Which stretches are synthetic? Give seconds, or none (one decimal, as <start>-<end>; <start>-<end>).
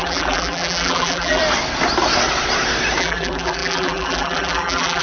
0.0-1.4; 3.0-5.0